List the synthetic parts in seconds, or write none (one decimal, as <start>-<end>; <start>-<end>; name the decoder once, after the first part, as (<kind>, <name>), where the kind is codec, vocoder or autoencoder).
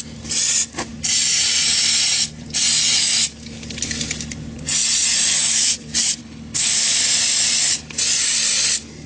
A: 6.2-7.0 (codec, HILCodec)